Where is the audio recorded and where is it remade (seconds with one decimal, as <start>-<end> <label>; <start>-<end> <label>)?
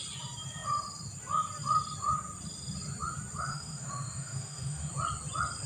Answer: 0.0-3.5 recorded; 3.5-4.9 remade; 4.9-5.7 recorded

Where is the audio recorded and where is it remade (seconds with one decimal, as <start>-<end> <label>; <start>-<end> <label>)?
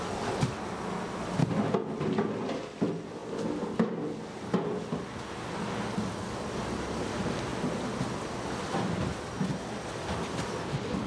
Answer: 0.0-11.1 recorded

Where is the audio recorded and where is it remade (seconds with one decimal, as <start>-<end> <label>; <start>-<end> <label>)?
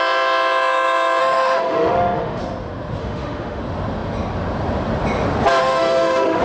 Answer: 0.0-1.2 recorded; 1.2-2.4 remade; 2.4-3.0 recorded; 3.0-3.6 remade; 3.6-5.6 recorded; 5.6-6.4 remade